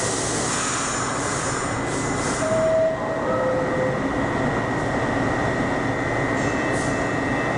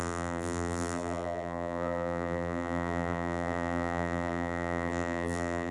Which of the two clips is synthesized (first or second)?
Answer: second